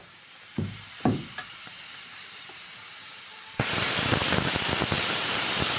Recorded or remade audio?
remade